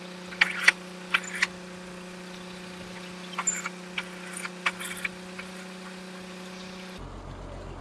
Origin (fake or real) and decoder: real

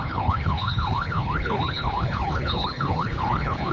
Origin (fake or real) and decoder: fake, codec, HILCodec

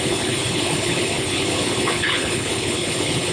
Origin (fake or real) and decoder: fake, codec, HILCodec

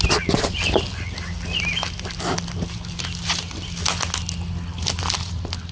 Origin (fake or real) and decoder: real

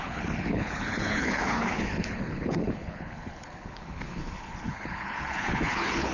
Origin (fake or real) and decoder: fake, codec, HILCodec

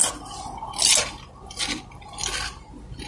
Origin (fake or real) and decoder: real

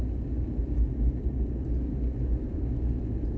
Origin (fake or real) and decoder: real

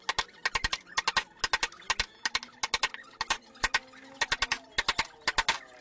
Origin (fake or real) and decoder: real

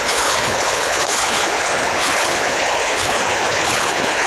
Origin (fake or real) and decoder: fake, codec, HILCodec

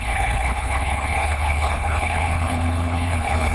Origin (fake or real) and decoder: fake, codec, HILCodec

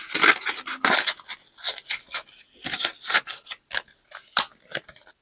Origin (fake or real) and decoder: real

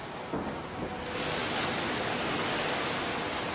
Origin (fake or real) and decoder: real